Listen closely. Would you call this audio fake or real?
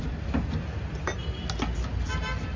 real